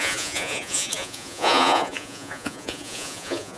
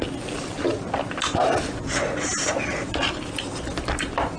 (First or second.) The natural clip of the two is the second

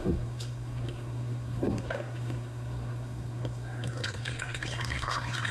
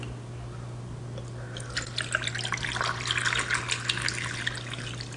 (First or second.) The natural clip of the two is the second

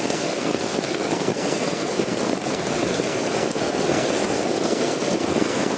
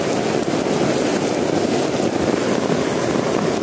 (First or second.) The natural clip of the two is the second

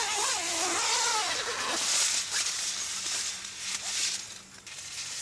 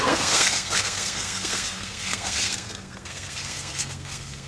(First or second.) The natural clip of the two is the first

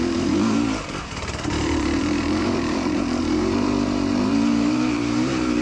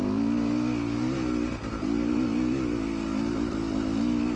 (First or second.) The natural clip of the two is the second